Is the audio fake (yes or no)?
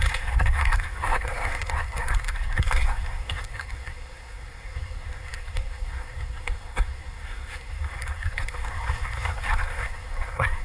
yes